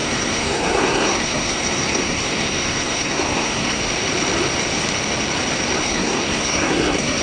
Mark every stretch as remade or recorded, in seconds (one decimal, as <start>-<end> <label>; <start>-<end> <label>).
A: 0.0-3.8 remade; 3.8-5.8 recorded; 5.8-7.2 remade